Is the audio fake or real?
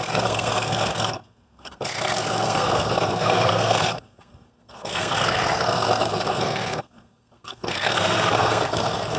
fake